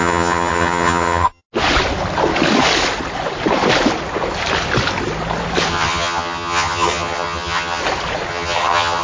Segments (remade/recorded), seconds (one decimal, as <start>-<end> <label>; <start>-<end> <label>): 0.0-1.4 remade; 1.4-5.7 recorded; 5.7-7.8 remade; 7.8-8.3 recorded; 8.3-9.0 remade